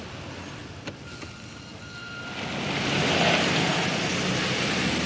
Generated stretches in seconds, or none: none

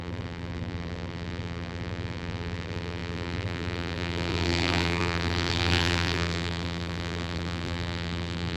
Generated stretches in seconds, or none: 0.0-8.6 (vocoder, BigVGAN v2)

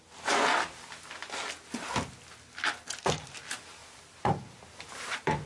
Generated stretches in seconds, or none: 3.8-5.5 (vocoder, BigVGAN v2)

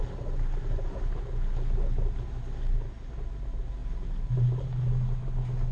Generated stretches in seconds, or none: 3.8-4.3 (vocoder, BigVGAN v2)